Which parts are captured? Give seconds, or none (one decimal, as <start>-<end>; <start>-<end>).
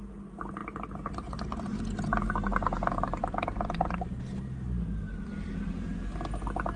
0.0-6.8